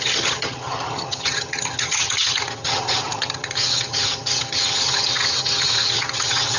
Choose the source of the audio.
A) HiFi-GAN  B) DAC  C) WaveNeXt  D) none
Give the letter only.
A